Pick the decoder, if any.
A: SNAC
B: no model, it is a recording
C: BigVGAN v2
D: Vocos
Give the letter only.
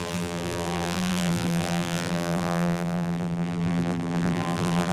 C